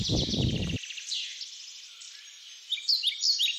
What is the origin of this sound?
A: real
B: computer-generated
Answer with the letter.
A